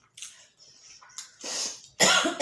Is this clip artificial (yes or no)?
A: no